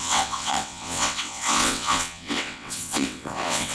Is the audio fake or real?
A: fake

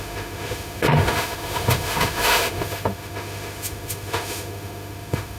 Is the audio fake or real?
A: fake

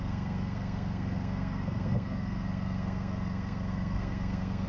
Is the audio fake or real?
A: fake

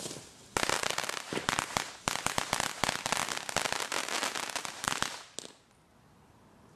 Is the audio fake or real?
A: real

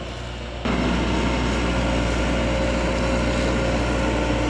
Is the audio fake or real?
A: real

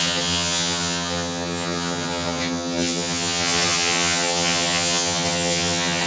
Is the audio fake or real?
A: fake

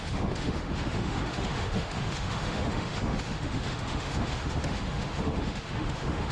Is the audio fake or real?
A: fake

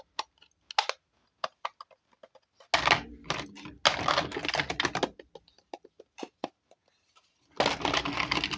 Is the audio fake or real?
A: real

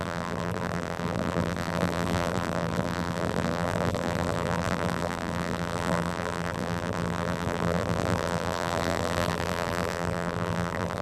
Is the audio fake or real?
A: fake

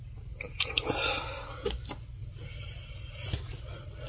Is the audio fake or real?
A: real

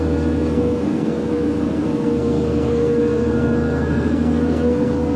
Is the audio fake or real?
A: fake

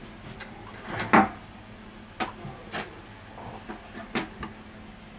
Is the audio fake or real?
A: real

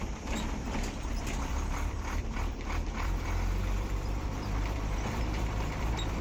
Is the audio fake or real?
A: fake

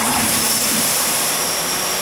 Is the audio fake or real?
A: fake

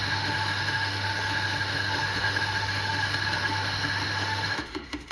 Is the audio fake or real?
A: fake